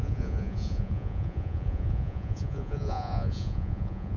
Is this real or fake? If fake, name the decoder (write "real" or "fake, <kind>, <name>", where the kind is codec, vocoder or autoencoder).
fake, vocoder, Vocos